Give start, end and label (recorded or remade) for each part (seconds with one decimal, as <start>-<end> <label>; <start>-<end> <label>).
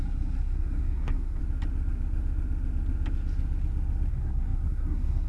0.0-1.4 remade; 1.4-4.1 recorded; 4.1-5.3 remade